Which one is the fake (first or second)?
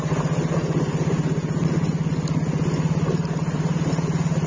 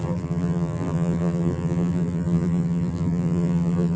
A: second